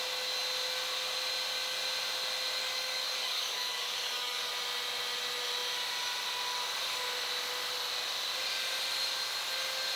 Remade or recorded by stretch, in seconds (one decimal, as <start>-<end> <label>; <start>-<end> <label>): 0.0-2.6 recorded; 2.6-4.5 remade; 4.5-10.0 recorded